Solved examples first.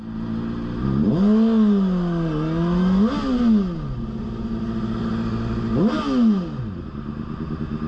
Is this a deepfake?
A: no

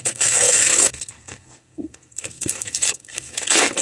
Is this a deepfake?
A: yes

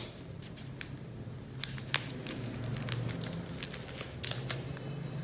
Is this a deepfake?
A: no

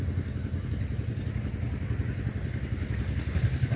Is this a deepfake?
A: no